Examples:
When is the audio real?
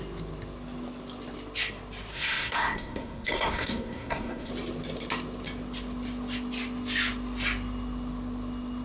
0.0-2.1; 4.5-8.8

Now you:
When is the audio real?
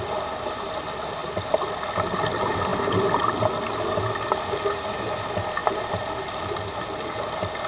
0.0-7.7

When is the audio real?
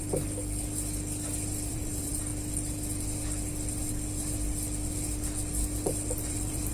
0.4-1.3; 2.3-6.3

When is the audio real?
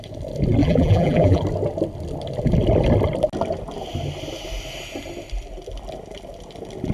0.0-0.6; 1.4-6.9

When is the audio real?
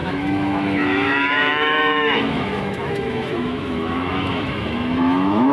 none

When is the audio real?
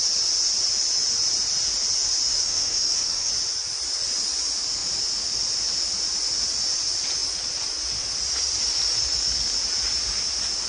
0.0-2.3; 3.3-10.7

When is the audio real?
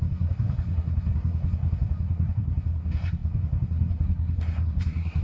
none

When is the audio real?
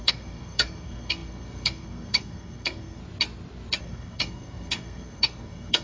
3.0-3.8